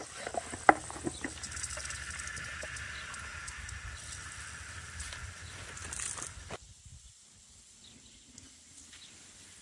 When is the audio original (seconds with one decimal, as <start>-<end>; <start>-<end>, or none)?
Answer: 0.0-5.8; 6.5-6.9; 7.4-9.6